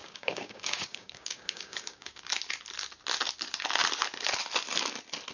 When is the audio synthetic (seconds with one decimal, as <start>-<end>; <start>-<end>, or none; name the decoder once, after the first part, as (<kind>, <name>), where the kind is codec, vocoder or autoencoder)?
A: 0.0-2.2 (codec, DAC)